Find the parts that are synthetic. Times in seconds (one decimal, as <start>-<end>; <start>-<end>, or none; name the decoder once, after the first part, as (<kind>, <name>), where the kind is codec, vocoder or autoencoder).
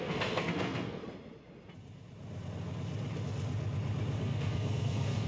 0.0-1.0 (codec, SNAC); 4.2-5.3